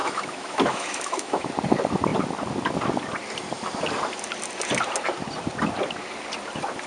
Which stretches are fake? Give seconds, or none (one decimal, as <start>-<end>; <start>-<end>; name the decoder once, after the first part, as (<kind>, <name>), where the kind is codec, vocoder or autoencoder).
0.0-1.5 (autoencoder, DAC-VAE)